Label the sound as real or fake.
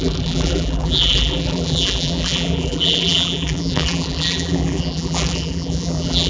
fake